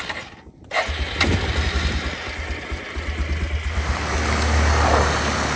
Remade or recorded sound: recorded